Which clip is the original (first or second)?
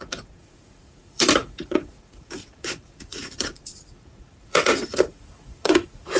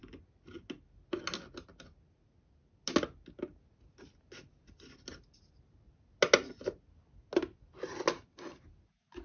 second